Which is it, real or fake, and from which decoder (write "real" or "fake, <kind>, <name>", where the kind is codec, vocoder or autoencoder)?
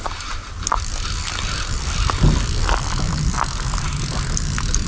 real